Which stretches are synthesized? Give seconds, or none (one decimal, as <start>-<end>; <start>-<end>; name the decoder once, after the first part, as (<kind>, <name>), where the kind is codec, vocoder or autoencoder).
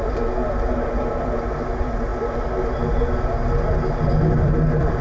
none